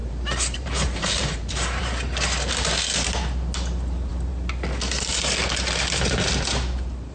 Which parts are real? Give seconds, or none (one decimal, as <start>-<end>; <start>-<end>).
1.8-7.1